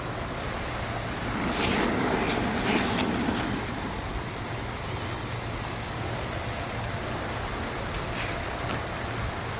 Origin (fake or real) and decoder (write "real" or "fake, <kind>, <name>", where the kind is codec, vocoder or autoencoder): real